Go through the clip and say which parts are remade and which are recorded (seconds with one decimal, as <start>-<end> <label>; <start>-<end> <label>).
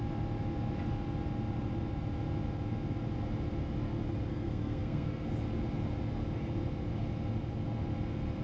0.0-4.3 recorded; 4.3-5.3 remade; 5.3-8.4 recorded